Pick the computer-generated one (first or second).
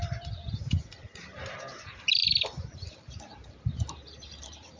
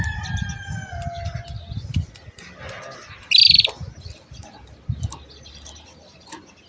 first